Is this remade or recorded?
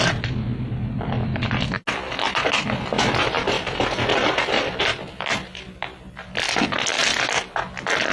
recorded